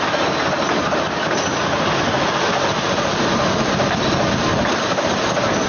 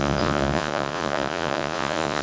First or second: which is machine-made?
second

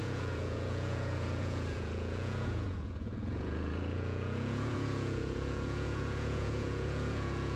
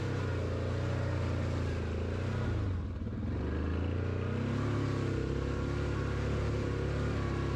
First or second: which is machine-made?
first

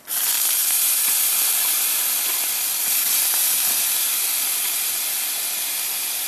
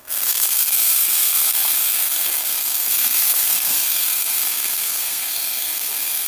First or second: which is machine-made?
second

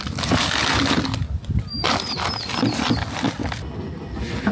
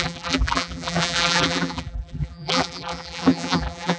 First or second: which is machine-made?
second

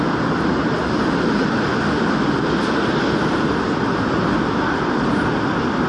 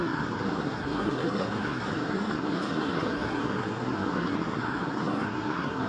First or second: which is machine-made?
second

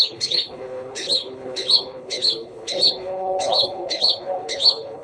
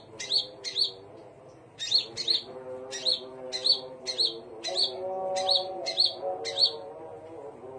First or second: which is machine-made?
first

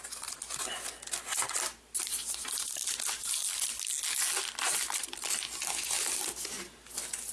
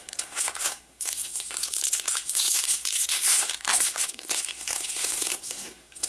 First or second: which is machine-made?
second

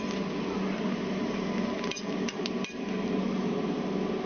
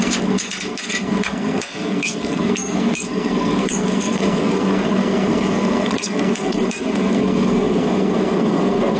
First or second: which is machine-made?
second